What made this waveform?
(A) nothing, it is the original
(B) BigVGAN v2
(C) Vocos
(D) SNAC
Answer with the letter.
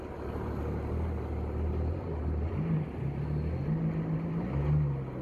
A